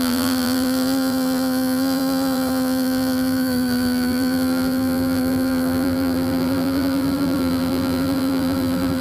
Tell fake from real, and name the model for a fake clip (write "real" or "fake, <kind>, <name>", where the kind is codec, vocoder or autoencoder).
fake, vocoder, BigVGAN v2